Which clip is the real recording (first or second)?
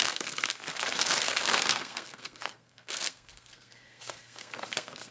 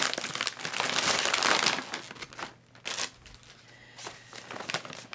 second